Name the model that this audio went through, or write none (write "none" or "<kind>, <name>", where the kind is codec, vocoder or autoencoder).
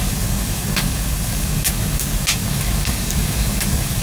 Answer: codec, DAC